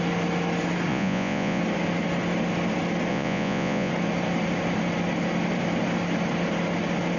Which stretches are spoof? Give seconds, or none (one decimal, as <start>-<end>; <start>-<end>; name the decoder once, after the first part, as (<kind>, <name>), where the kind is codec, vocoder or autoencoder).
0.9-1.6 (vocoder, Vocos); 3.1-3.9